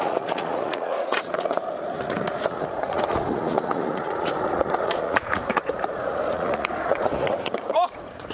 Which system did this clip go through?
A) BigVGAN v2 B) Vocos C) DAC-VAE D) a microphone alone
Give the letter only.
B